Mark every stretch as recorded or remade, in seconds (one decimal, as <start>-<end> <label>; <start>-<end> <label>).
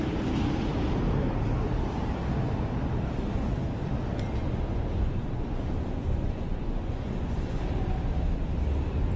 0.0-4.4 recorded; 4.4-7.6 remade; 7.6-9.2 recorded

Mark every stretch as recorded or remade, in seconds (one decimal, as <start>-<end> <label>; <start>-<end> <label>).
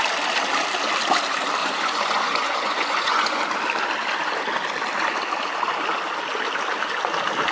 0.0-1.6 recorded; 1.6-3.4 remade; 3.4-7.5 recorded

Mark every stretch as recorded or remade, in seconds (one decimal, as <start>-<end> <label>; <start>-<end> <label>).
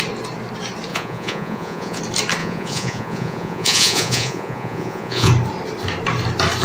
0.0-0.9 recorded; 0.9-2.0 remade; 2.0-2.4 recorded; 2.4-5.3 remade; 5.3-6.6 recorded